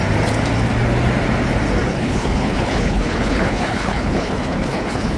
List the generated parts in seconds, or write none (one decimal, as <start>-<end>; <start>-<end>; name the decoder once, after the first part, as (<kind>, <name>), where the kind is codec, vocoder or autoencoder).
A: 1.9-5.2 (codec, HILCodec)